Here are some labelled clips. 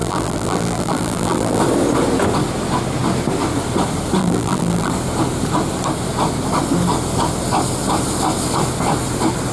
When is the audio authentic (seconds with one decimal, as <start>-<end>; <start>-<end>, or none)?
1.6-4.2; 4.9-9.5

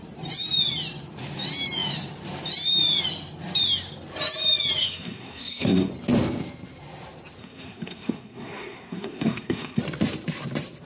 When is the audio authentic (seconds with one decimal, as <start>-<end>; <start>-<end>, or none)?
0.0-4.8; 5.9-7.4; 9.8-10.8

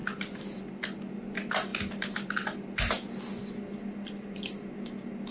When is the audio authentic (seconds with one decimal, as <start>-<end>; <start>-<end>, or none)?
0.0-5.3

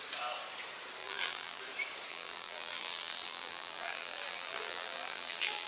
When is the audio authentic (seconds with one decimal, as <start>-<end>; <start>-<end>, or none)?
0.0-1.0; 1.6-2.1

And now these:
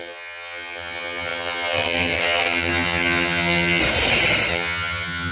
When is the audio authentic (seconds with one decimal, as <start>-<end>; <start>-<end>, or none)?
3.8-4.5